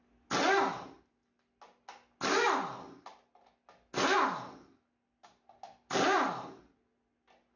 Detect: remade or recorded recorded